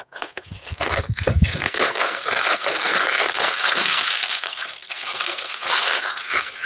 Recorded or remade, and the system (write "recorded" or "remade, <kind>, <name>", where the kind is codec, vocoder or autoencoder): remade, codec, SNAC